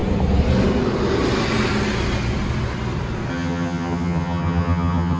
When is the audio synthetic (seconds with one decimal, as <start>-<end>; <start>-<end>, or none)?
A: 3.3-5.2